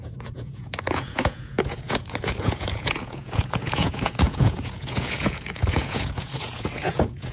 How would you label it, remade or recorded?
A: remade